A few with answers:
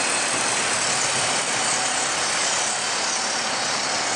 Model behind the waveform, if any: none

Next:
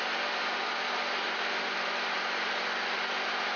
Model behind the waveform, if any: none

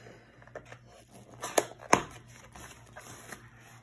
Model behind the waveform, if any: none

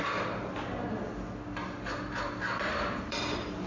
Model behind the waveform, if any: vocoder, BigVGAN v2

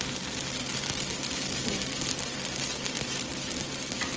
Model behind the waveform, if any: none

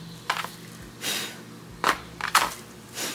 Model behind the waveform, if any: none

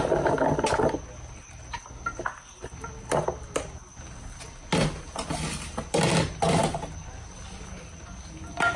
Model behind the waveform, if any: none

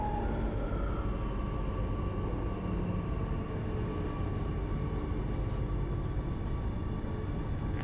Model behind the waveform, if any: none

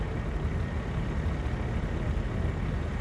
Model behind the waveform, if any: none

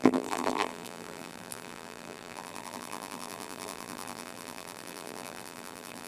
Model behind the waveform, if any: vocoder, BigVGAN v2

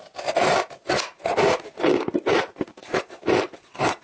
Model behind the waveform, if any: none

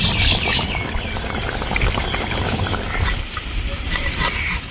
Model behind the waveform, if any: vocoder, BigVGAN v2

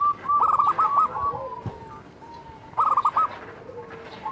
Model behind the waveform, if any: none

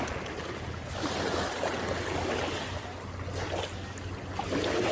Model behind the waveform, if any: none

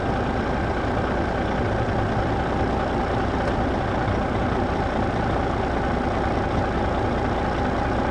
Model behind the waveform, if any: none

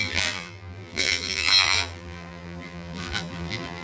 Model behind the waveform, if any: vocoder, BigVGAN v2